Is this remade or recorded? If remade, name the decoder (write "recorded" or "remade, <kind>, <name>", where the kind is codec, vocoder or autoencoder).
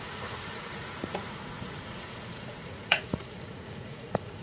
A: remade, vocoder, Vocos